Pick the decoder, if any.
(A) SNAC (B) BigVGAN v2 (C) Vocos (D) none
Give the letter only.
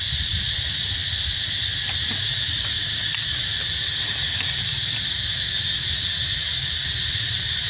D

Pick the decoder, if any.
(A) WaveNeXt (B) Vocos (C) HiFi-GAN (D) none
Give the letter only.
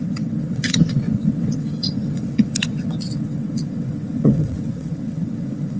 A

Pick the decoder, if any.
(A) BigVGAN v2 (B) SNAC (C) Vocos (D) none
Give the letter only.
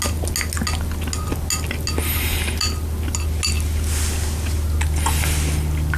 D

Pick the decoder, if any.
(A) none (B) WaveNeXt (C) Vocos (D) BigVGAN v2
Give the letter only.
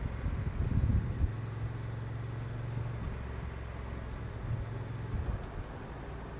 A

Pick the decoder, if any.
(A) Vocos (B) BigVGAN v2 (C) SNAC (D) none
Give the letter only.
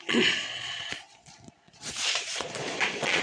A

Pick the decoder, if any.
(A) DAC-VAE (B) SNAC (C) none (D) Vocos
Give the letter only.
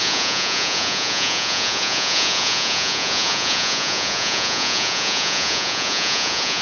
D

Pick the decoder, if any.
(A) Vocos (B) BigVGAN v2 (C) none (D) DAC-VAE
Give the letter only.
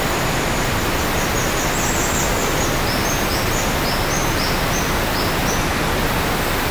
C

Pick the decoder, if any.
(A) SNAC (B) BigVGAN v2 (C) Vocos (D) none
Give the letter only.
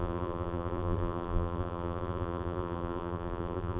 B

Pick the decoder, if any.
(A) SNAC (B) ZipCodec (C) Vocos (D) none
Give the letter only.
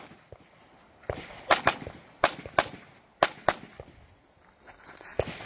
D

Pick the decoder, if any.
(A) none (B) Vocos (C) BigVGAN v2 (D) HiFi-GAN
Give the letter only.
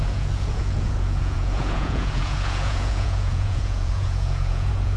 B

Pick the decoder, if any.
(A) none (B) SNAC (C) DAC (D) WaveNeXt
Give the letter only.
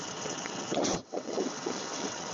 D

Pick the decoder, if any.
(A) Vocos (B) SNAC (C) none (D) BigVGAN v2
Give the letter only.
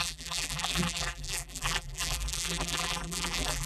D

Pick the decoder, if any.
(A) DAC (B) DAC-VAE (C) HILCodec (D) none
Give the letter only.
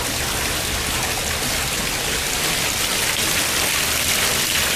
D